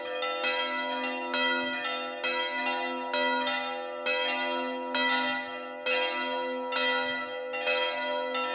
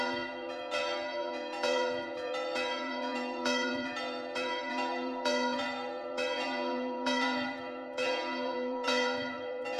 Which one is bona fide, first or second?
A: first